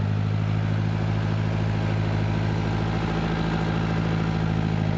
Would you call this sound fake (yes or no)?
no